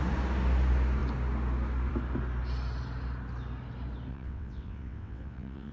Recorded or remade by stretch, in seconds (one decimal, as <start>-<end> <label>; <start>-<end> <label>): 0.0-4.1 recorded; 4.1-5.7 remade